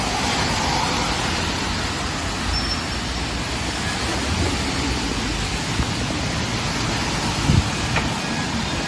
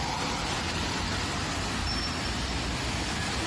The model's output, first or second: second